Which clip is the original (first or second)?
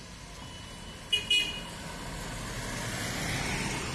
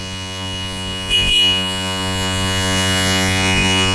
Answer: first